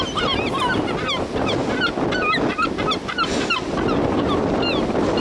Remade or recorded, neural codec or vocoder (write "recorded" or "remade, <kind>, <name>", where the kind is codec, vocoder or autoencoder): recorded